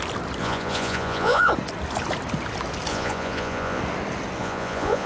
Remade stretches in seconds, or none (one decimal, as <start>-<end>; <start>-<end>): 0.4-1.5; 2.9-3.8; 4.4-5.1